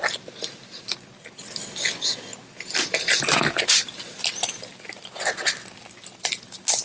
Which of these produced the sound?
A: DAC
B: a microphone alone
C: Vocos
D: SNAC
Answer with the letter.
B